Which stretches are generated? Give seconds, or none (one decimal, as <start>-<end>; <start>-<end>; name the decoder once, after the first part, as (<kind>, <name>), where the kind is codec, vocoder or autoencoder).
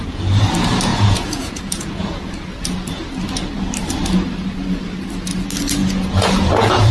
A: 0.9-2.3 (vocoder, Vocos); 5.8-6.9